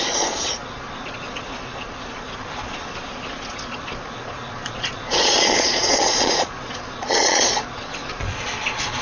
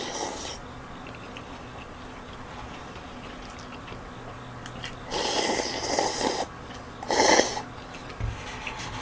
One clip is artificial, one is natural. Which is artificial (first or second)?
first